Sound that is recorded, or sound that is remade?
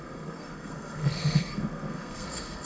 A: remade